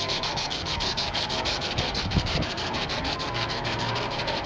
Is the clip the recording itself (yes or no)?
no